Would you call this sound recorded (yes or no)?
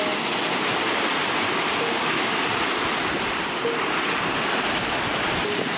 yes